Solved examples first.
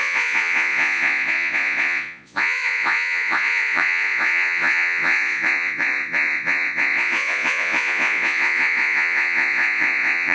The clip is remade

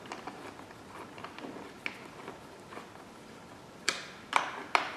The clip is recorded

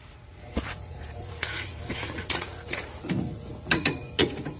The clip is remade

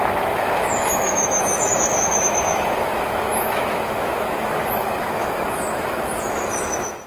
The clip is remade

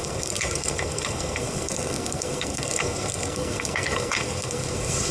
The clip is remade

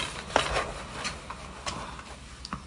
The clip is recorded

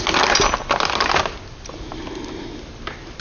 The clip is recorded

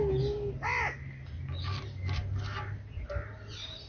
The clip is recorded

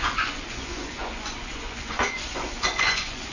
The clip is remade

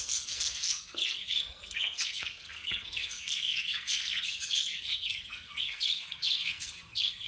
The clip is remade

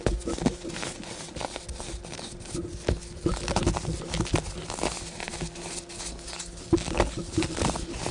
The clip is recorded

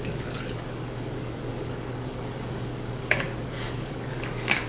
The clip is remade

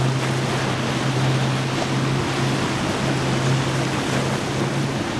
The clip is recorded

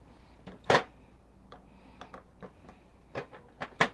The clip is recorded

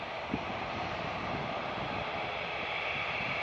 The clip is recorded